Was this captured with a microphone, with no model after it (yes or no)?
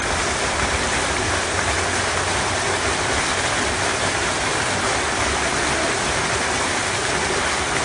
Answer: yes